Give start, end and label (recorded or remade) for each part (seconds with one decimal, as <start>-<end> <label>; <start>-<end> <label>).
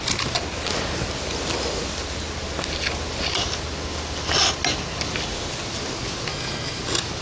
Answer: 0.0-6.3 recorded; 6.3-6.8 remade; 6.8-7.2 recorded